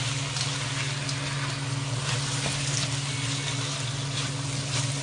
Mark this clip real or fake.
real